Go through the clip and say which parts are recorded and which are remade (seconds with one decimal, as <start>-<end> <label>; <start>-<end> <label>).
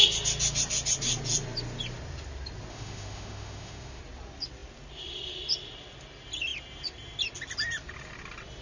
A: 0.0-2.7 recorded; 2.7-4.0 remade; 4.0-8.6 recorded